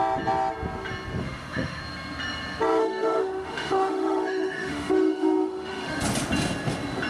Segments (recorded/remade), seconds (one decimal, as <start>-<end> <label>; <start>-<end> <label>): 0.0-1.2 recorded; 1.2-1.8 remade; 1.8-2.8 recorded; 2.8-6.0 remade; 6.0-7.1 recorded